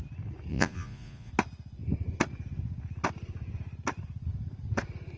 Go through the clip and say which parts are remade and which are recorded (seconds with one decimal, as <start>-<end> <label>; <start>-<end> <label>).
0.0-0.5 recorded; 0.5-1.3 remade; 1.3-5.2 recorded